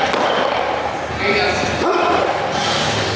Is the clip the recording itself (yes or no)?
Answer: yes